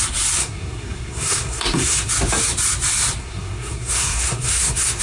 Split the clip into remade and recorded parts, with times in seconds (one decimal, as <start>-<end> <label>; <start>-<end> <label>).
0.0-0.4 recorded; 0.4-2.1 remade; 2.1-3.2 recorded; 3.2-5.0 remade